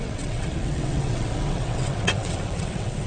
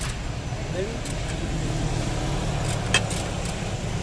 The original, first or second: second